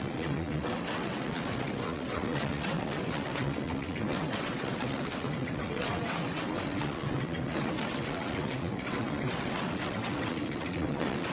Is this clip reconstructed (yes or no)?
yes